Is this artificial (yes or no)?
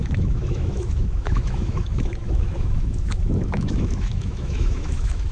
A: yes